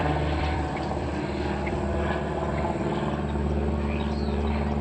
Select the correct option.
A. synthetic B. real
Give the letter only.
A